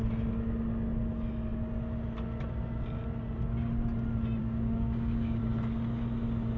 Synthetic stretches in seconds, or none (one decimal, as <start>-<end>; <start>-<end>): 4.4-5.4